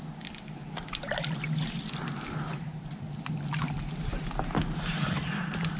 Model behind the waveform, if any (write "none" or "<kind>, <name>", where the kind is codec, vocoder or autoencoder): none